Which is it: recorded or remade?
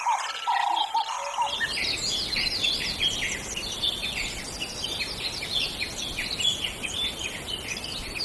recorded